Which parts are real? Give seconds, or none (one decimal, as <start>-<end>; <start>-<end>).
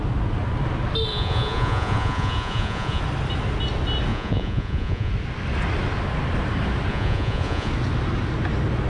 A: 0.0-1.1; 3.0-4.1; 5.1-6.9; 7.7-8.9